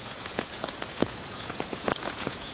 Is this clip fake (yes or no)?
yes